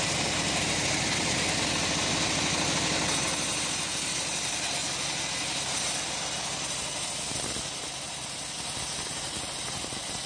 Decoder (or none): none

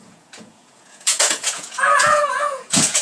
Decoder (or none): vocoder, Vocos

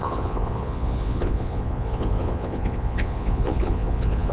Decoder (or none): vocoder, Vocos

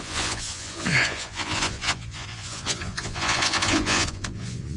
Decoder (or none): vocoder, Vocos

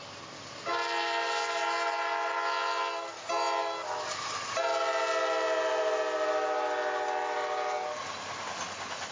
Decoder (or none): none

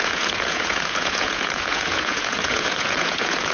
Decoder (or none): vocoder, Vocos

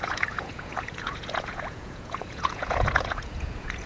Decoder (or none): vocoder, Vocos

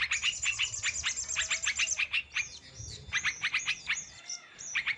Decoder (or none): none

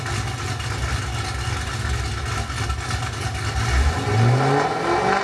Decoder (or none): none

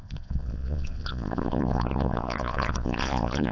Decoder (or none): vocoder, Vocos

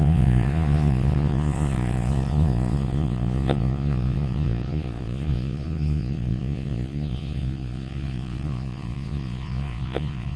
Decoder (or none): vocoder, Vocos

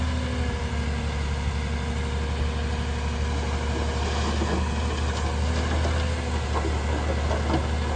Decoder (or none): none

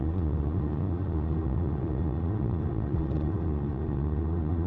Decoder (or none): vocoder, Vocos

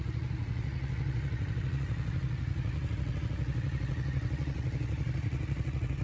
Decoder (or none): vocoder, Vocos